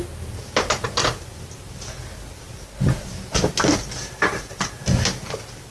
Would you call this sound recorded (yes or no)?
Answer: yes